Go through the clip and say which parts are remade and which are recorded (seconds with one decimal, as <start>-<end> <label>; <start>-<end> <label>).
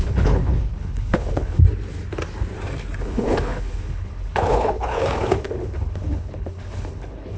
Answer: 0.0-1.6 remade; 1.6-3.0 recorded; 3.0-7.4 remade